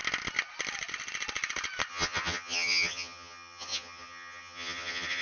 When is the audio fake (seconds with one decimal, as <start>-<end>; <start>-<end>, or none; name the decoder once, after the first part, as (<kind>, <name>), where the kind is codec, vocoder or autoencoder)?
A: 1.9-5.2 (vocoder, HiFi-GAN)